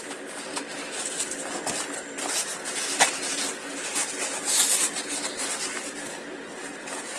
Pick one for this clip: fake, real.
real